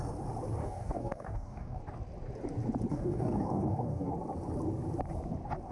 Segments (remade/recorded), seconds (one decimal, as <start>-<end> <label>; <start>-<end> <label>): 0.0-0.6 recorded; 0.6-1.8 remade; 1.8-2.9 recorded; 2.9-4.1 remade; 4.1-5.7 recorded